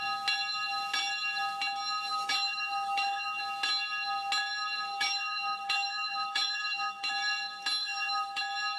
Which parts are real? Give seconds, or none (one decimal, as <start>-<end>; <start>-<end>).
0.0-2.1; 3.4-4.9; 7.1-7.8; 8.4-8.8